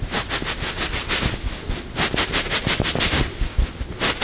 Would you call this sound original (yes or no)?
yes